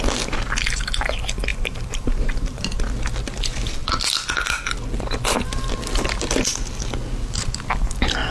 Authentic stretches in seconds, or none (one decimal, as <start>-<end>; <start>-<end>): 0.0-1.5; 2.8-6.5; 7.7-8.3